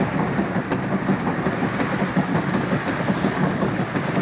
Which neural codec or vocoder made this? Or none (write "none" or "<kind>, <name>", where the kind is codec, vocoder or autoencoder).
none